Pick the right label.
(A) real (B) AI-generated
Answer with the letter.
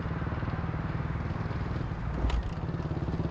A